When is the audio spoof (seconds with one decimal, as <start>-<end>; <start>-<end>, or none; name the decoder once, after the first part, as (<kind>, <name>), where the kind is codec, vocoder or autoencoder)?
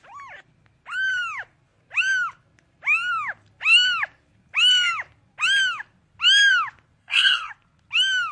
7.0-7.5 (codec, SNAC)